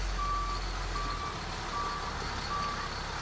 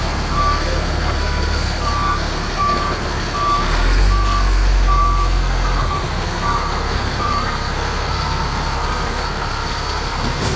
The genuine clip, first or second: first